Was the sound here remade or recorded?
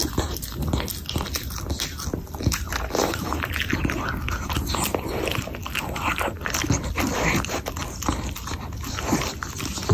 recorded